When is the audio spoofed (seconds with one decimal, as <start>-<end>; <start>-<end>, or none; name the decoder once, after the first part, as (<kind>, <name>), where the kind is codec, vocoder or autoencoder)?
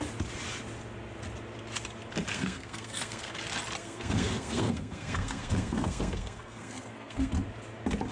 2.3-3.3 (codec, SNAC); 3.8-7.3